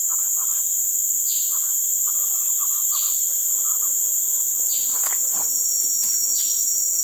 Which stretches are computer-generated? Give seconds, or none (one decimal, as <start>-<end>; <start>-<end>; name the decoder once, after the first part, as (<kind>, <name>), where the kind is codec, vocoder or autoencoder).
none

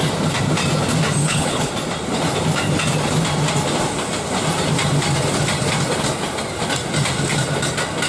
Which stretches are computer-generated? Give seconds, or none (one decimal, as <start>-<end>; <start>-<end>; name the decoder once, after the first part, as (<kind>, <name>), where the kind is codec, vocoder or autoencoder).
1.2-1.7 (codec, HILCodec)

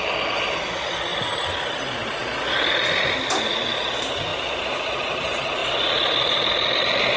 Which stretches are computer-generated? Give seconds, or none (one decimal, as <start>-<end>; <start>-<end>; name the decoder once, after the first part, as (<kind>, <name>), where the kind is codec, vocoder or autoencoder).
none